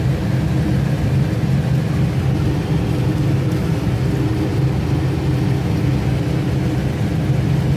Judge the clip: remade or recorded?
recorded